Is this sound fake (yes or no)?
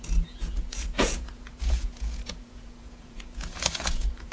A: yes